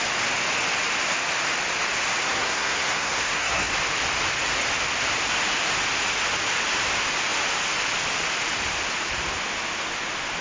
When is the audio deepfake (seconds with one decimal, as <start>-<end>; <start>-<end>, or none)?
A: 2.2-3.7